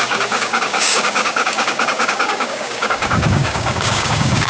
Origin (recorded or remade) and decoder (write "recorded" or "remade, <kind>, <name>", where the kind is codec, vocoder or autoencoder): remade, codec, DAC